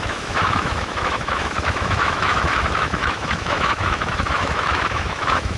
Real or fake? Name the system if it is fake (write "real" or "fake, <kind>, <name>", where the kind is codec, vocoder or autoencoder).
fake, autoencoder, DAC-VAE